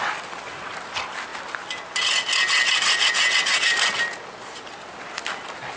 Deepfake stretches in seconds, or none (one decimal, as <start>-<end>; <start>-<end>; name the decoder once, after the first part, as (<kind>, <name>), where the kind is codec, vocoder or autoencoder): none